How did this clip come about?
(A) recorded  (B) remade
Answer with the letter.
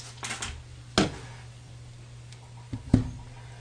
A